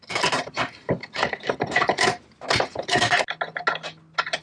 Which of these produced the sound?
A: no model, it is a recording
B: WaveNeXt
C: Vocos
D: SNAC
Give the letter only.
A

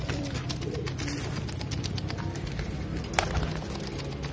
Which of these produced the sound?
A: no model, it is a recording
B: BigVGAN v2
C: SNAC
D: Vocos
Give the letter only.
A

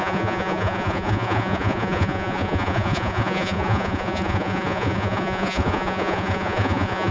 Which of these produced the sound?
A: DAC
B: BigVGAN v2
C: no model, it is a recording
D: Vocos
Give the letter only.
D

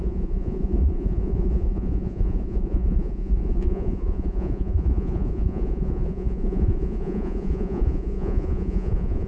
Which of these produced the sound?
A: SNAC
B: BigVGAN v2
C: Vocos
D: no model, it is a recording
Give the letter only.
C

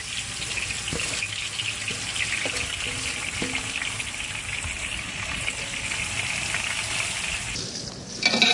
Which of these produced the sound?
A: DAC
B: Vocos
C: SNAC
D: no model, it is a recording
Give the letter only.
D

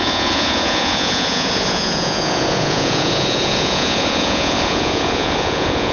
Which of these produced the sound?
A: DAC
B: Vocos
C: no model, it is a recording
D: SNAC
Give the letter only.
B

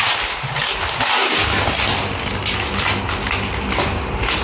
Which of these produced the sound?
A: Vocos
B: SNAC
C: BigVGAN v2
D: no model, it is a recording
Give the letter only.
D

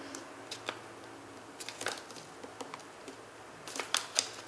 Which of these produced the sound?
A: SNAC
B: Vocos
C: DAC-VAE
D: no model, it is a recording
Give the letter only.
D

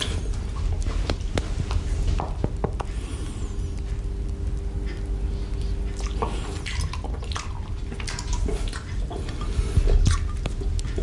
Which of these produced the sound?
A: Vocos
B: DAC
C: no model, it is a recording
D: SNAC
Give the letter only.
C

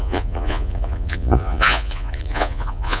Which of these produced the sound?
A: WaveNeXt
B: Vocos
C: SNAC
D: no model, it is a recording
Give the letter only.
B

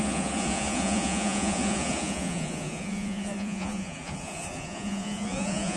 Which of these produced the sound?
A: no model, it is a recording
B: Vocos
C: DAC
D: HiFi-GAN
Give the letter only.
B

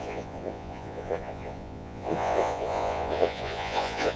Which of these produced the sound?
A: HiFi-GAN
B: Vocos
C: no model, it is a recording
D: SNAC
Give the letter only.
B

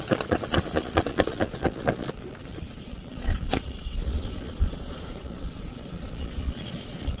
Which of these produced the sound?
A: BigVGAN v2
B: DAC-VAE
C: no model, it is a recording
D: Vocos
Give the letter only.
D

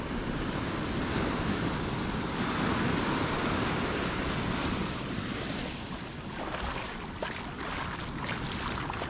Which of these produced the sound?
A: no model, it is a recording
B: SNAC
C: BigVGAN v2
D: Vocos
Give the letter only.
A